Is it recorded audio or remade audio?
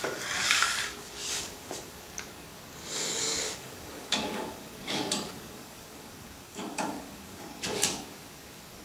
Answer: remade